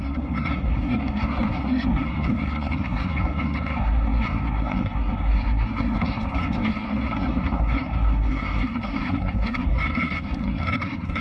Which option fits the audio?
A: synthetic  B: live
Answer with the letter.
A